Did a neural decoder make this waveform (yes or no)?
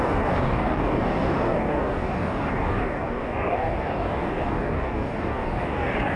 yes